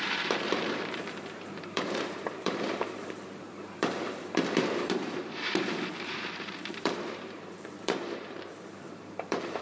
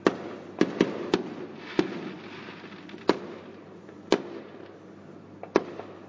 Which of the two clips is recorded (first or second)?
second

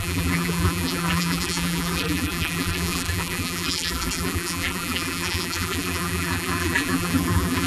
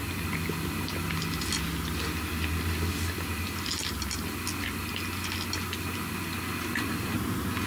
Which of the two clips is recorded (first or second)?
second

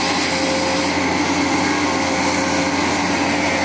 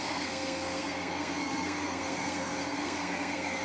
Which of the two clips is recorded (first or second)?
first